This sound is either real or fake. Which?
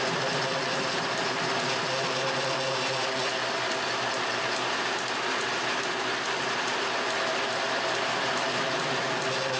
real